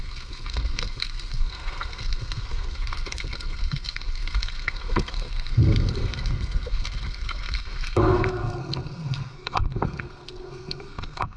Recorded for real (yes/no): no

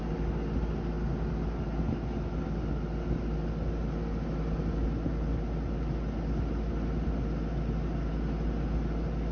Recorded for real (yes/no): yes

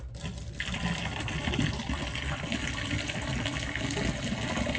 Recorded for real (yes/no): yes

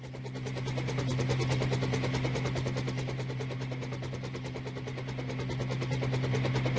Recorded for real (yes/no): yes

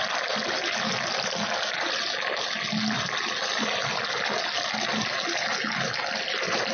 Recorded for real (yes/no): yes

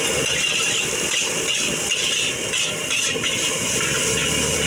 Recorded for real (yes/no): yes